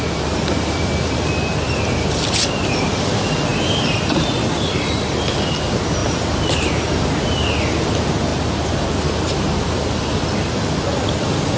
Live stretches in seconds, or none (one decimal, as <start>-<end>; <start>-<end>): 0.0-11.6